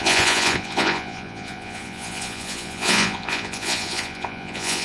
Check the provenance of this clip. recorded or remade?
remade